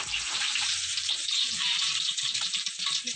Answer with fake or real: fake